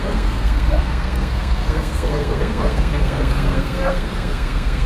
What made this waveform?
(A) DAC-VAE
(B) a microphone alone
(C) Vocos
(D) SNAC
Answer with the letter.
D